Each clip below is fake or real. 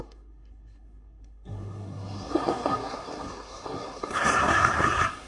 fake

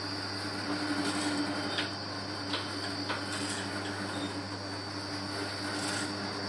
real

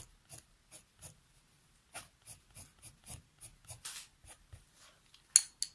real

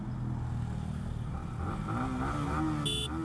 real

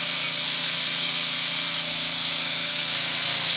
fake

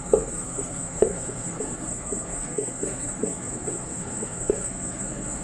fake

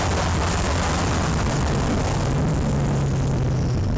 real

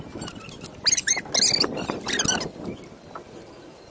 real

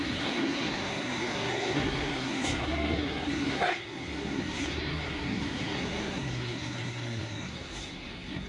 fake